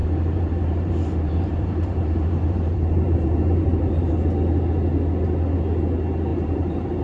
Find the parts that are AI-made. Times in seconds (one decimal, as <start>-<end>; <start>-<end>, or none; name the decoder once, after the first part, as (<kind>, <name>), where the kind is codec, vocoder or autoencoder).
0.0-4.1 (vocoder, BigVGAN v2); 6.3-7.0